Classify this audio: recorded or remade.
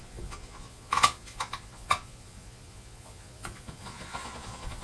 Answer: remade